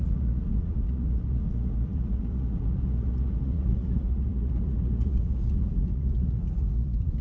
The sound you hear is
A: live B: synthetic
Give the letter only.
B